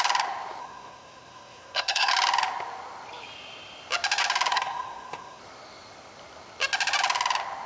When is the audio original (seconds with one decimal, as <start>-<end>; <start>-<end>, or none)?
0.0-0.6; 2.1-4.5; 5.4-7.7